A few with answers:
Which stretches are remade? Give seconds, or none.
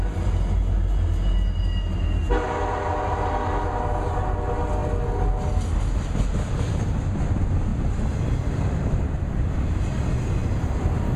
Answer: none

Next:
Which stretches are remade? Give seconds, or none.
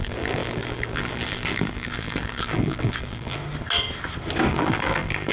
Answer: 0.0-3.4 (vocoder, BigVGAN v2); 4.5-5.3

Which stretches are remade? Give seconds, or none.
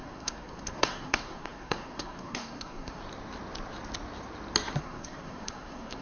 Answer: 0.0-3.0 (codec, SNAC); 4.8-6.0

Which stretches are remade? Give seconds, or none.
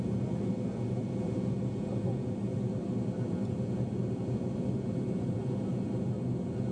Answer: none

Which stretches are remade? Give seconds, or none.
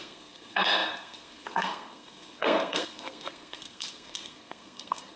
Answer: 0.0-5.2 (codec, SNAC)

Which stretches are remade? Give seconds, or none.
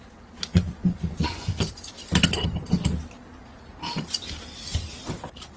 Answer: 0.5-1.5 (vocoder, Vocos)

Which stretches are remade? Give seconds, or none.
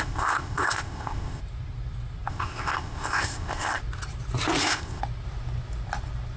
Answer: 0.0-1.4 (codec, ZipCodec); 2.3-3.8; 4.6-5.0